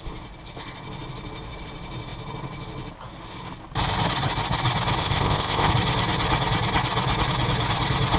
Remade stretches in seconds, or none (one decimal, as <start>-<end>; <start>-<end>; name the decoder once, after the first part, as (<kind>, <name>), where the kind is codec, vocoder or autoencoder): 5.0-5.7 (codec, ZipCodec)